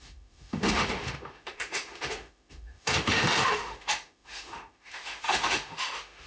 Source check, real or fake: fake